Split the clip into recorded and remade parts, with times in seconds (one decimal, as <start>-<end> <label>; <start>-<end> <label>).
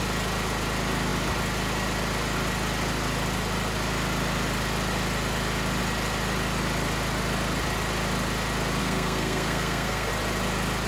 0.0-8.8 recorded; 8.8-10.1 remade; 10.1-10.9 recorded